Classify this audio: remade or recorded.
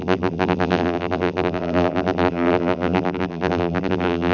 remade